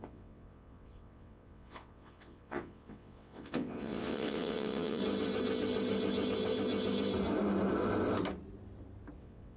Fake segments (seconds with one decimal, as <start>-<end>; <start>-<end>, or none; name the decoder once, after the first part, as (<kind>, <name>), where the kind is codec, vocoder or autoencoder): 0.0-5.0 (vocoder, WaveNeXt); 9.2-9.6